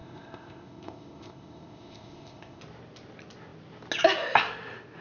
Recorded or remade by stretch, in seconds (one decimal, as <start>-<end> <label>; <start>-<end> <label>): 0.0-2.6 remade; 2.6-5.0 recorded